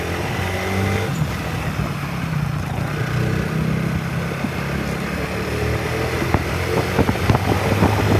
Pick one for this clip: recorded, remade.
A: recorded